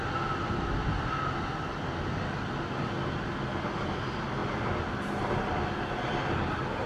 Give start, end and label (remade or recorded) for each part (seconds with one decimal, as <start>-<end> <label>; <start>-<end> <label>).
0.0-6.9 recorded